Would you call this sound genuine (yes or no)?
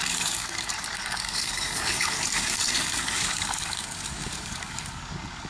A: no